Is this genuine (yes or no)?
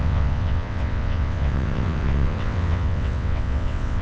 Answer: no